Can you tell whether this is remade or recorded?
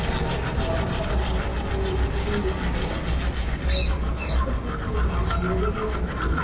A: recorded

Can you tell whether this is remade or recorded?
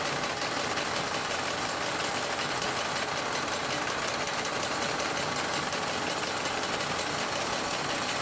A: recorded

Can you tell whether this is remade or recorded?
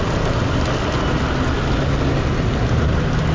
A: recorded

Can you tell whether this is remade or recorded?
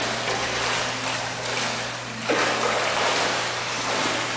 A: recorded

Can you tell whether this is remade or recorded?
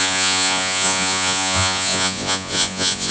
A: remade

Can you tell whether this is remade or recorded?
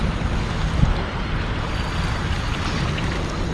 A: recorded